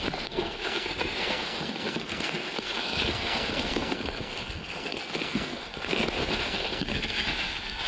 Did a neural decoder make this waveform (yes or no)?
yes